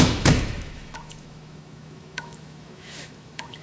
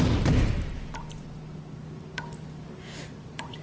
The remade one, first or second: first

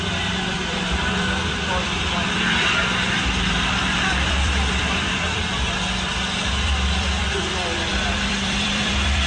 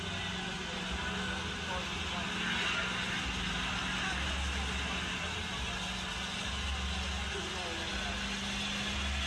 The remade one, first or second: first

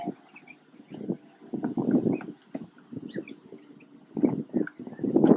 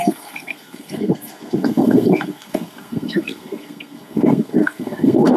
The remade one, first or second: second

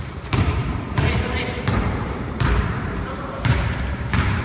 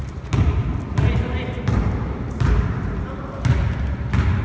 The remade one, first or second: first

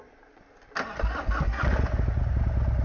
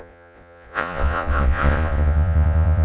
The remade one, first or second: second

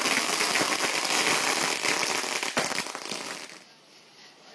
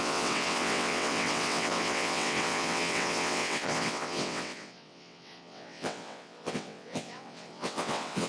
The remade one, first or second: second